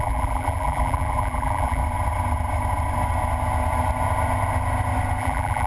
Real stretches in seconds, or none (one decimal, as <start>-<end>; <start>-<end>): 1.8-5.2